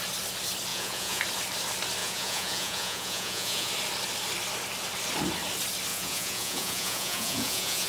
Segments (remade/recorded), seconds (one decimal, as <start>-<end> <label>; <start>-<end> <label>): 0.0-0.7 recorded; 0.7-1.2 remade; 1.2-2.0 recorded; 2.0-3.7 remade; 3.7-5.9 recorded; 5.9-7.9 remade